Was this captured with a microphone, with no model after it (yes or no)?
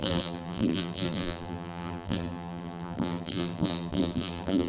no